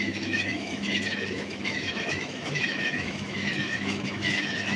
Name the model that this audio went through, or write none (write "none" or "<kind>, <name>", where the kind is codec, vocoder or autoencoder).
autoencoder, DAC-VAE